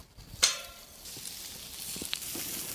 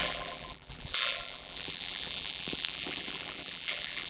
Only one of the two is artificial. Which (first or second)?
second